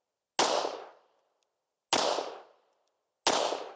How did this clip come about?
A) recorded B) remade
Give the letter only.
A